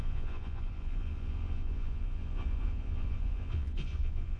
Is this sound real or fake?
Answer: fake